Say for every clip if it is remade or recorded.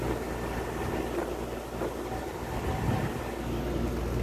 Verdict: recorded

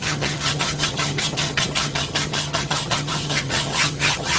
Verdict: remade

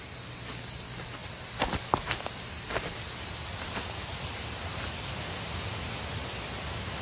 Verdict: recorded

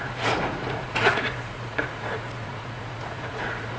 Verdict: remade